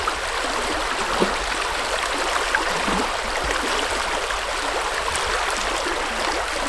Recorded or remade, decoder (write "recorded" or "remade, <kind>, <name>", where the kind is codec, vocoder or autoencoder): recorded